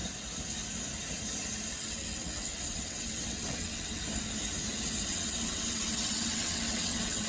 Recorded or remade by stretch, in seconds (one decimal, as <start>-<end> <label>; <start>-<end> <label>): 0.0-1.7 recorded; 1.7-4.0 remade; 4.0-5.1 recorded; 5.1-7.3 remade